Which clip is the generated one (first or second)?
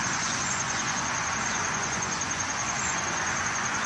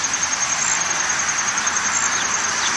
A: first